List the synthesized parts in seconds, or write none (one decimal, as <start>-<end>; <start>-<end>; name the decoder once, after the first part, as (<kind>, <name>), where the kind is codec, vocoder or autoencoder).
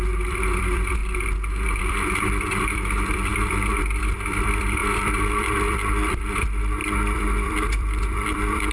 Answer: 0.0-1.0 (vocoder, BigVGAN v2); 1.8-8.7